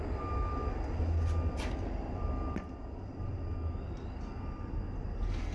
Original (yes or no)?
yes